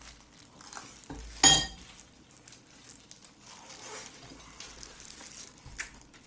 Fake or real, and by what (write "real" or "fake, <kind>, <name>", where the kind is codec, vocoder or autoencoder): real